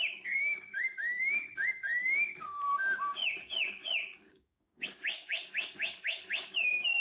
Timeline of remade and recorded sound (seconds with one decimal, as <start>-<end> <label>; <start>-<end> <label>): 0.0-7.0 remade